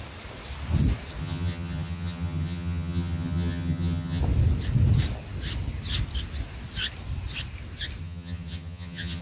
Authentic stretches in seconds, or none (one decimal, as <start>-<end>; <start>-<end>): 0.0-1.2; 4.2-8.0